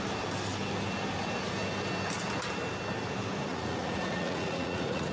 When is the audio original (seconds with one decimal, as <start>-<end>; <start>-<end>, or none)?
0.0-3.5